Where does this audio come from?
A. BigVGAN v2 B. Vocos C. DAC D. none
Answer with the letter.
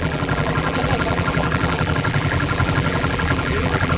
A